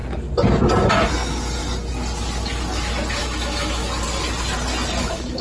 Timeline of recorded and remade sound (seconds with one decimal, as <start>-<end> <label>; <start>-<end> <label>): 0.0-3.2 recorded; 3.2-3.8 remade; 3.8-5.0 recorded; 5.0-5.4 remade